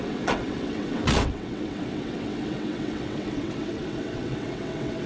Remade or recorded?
remade